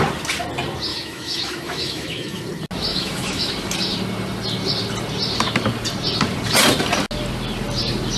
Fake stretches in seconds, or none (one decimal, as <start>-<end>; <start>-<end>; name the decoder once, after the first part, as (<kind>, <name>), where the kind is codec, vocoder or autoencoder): 0.9-2.4 (autoencoder, DAC-VAE); 2.9-3.5